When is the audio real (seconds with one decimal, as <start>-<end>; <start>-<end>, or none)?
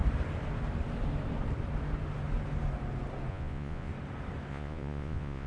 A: 0.0-3.3; 3.9-4.5